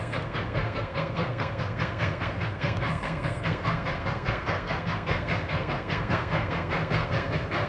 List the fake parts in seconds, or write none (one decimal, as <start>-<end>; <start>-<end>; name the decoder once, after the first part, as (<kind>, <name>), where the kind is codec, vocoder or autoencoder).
0.0-7.7 (codec, SNAC)